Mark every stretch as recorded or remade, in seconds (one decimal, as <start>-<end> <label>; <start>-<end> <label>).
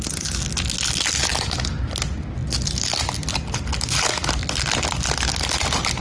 0.0-6.0 recorded